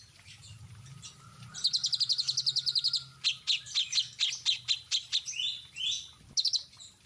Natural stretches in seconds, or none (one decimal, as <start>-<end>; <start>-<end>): 0.0-7.1